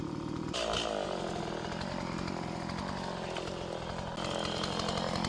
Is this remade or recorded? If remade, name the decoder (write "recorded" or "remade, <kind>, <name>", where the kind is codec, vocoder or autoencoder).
recorded